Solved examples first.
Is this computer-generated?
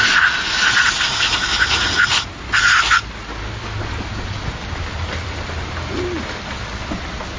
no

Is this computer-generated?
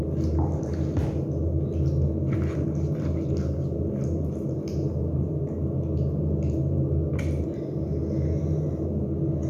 no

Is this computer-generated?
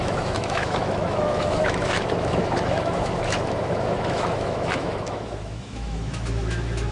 yes